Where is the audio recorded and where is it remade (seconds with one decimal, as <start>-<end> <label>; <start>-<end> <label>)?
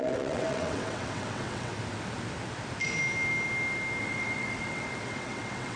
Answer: 0.0-1.7 remade; 1.7-4.0 recorded; 4.0-5.8 remade